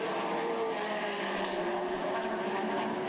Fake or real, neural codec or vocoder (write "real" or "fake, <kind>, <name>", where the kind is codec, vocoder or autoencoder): fake, vocoder, BigVGAN v2